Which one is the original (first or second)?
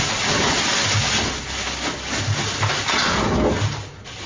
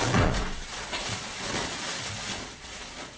first